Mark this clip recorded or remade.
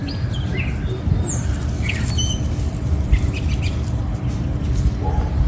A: recorded